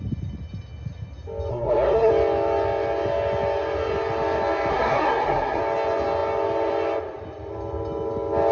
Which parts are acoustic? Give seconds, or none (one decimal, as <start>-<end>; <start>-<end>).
0.0-1.5; 2.1-4.7; 5.6-8.5